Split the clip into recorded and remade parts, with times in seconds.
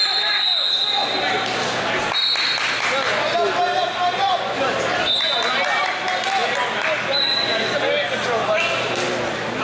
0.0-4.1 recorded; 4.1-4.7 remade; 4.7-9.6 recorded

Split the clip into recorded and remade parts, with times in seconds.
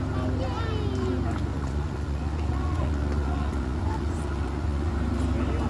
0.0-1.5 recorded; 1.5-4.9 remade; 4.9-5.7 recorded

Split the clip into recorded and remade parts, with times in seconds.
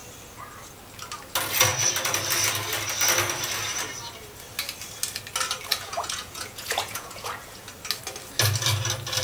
0.0-5.7 recorded; 5.7-7.7 remade; 7.7-9.2 recorded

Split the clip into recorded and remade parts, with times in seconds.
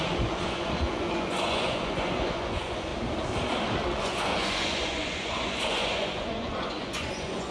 0.0-2.9 remade; 2.9-4.0 recorded; 4.0-7.5 remade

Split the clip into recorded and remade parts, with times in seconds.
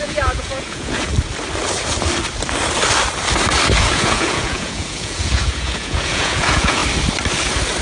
0.0-1.1 remade; 1.1-3.8 recorded; 3.8-6.8 remade; 6.8-7.8 recorded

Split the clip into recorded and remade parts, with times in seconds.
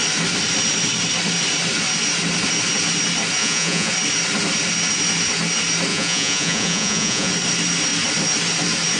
0.0-3.4 recorded; 3.4-3.9 remade; 3.9-5.9 recorded; 5.9-7.3 remade; 7.3-9.0 recorded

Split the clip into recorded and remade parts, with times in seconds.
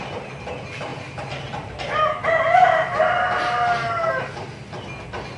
0.0-5.4 recorded